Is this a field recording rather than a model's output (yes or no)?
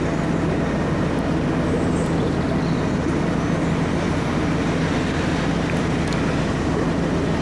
yes